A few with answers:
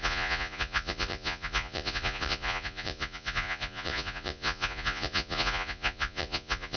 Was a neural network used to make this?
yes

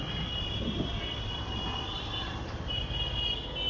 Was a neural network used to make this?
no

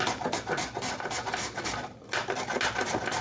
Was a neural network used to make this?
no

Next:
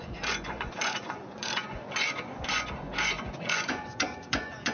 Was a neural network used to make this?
yes